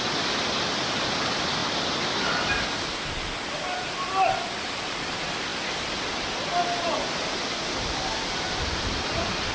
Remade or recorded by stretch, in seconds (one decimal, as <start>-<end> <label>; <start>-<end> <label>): 0.0-1.6 remade; 1.6-4.6 recorded; 4.6-5.5 remade; 5.5-6.8 recorded; 6.8-9.5 remade